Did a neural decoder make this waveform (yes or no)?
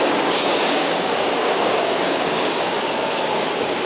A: yes